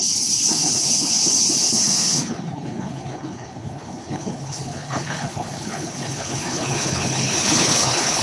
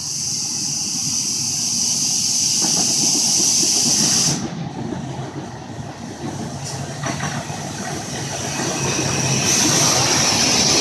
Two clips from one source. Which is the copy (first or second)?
first